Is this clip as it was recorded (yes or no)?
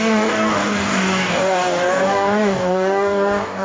no